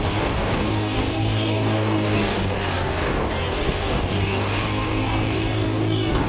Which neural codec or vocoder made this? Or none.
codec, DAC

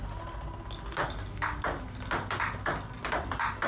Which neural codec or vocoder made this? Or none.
none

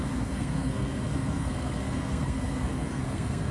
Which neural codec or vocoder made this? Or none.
codec, SNAC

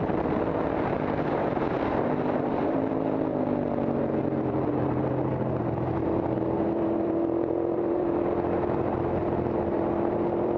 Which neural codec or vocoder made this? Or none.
vocoder, BigVGAN v2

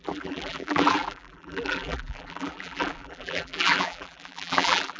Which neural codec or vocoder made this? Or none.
vocoder, BigVGAN v2